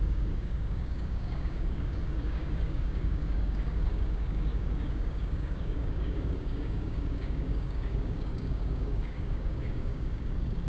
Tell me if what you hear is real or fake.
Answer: fake